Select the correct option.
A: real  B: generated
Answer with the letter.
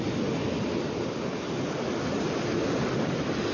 A